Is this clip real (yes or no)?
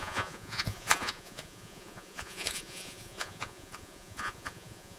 no